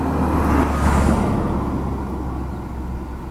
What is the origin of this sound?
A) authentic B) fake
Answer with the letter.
A